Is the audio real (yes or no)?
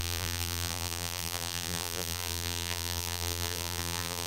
no